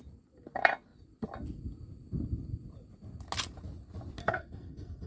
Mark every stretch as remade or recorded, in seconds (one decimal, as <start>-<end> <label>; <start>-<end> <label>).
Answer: 0.0-4.2 recorded; 4.2-5.1 remade

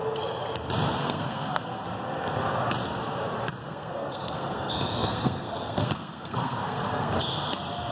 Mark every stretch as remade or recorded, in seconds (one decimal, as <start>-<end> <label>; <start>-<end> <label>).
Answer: 0.0-1.0 recorded; 1.0-1.8 remade; 1.8-3.6 recorded; 3.6-7.1 remade; 7.1-7.9 recorded

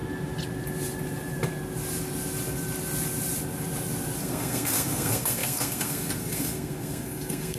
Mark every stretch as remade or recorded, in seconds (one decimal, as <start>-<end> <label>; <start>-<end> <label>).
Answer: 0.0-4.2 recorded; 4.2-7.6 remade

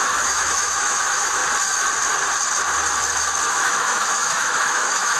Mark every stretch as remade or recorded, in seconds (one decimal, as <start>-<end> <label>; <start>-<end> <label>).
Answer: 0.0-1.4 remade; 1.4-3.5 recorded; 3.5-5.2 remade

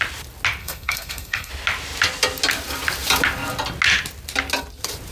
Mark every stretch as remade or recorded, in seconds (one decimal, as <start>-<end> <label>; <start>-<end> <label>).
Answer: 0.0-0.6 recorded; 0.6-1.5 remade; 1.5-5.1 recorded

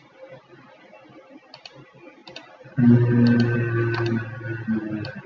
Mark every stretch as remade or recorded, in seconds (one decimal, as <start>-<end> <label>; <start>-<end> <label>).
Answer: 0.0-5.3 recorded

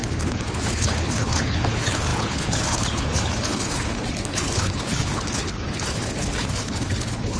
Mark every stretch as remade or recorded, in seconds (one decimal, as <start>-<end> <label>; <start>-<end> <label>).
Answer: 0.0-7.4 remade